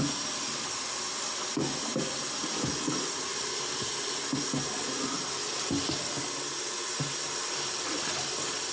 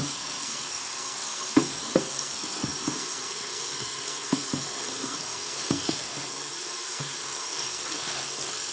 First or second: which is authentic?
first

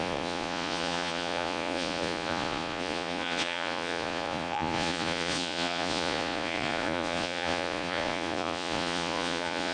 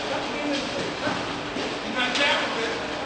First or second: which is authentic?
second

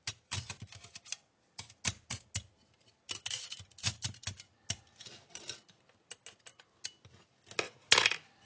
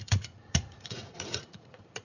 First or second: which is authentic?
first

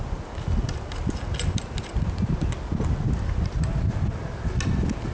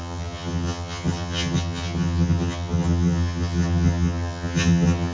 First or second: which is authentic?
first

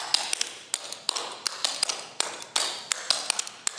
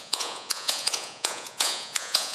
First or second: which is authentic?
first